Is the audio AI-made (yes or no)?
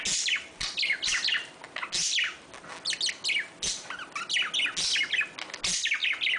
no